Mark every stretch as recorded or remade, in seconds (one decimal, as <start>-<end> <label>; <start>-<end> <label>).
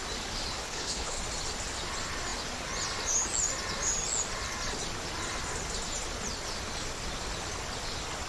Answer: 0.0-0.6 recorded; 0.6-1.2 remade; 1.2-8.3 recorded